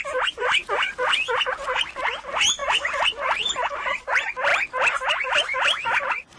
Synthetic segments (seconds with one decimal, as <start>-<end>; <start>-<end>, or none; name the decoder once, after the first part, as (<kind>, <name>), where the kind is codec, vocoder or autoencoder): 0.0-0.6 (vocoder, BigVGAN v2); 2.1-4.5; 5.1-6.4